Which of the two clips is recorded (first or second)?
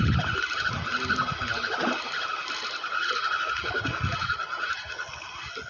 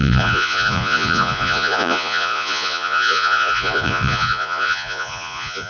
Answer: first